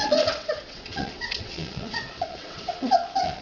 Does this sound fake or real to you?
fake